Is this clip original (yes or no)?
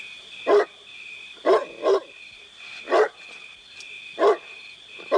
yes